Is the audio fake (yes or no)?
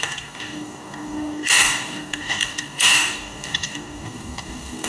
yes